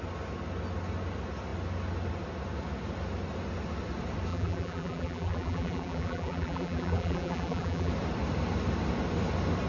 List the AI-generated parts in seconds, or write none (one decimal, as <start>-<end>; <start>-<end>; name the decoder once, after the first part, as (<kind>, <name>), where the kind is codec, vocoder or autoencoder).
4.3-7.9 (vocoder, BigVGAN v2)

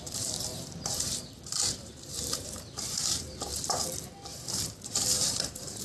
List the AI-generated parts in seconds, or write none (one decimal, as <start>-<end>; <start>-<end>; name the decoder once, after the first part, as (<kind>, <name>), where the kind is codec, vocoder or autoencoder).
0.0-3.5 (vocoder, BigVGAN v2); 4.6-5.8